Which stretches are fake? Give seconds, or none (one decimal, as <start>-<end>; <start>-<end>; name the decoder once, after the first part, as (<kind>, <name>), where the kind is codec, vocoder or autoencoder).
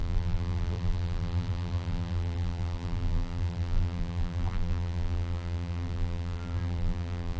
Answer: 0.0-7.4 (vocoder, BigVGAN v2)